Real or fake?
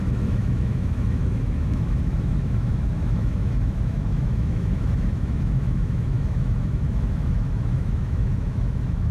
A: fake